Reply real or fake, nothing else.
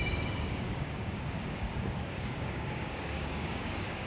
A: fake